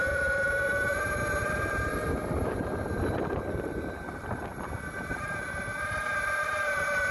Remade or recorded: recorded